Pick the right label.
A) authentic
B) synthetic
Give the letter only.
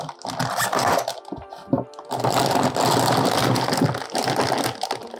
A